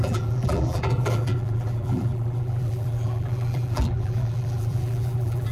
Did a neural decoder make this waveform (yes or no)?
yes